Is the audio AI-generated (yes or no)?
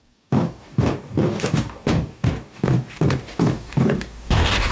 yes